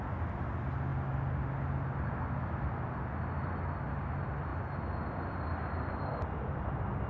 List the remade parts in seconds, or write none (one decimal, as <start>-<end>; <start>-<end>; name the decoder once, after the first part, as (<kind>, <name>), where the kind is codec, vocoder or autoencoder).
none